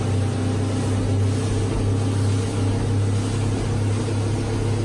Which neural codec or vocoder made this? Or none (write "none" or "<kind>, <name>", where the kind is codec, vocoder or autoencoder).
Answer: none